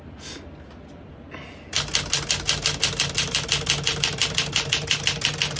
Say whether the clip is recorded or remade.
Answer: recorded